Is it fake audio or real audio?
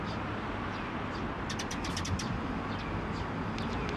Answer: real